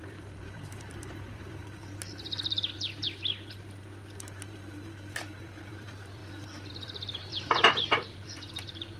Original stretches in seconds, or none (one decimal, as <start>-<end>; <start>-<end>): 1.6-5.1; 6.2-6.7